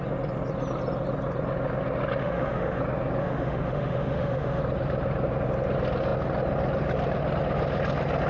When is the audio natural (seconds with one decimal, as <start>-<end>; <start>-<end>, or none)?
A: 0.0-2.2; 2.8-3.2; 4.6-8.3